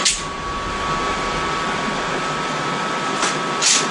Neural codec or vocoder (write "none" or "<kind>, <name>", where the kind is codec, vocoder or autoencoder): none